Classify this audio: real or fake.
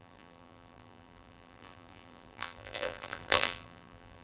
fake